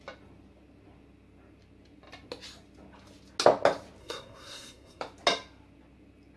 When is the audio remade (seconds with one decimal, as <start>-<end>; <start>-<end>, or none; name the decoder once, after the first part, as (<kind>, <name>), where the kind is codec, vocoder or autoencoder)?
4.0-5.0 (codec, SNAC)